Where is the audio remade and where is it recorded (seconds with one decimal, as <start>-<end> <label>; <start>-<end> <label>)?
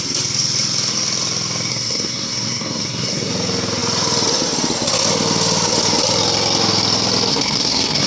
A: 0.0-1.7 recorded; 1.7-3.3 remade; 3.3-7.3 recorded; 7.3-8.1 remade